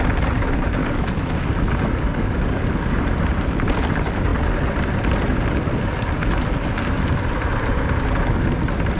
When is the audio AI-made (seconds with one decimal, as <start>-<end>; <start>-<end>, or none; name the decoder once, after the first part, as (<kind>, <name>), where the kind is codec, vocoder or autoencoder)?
0.8-3.0 (codec, DAC)